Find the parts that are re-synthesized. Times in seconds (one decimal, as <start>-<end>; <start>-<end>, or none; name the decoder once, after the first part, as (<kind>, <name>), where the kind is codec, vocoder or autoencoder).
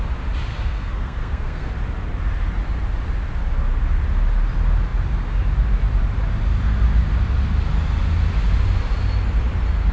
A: 0.5-1.7 (codec, SNAC)